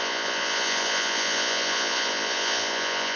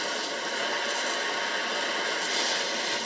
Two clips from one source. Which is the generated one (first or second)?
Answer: first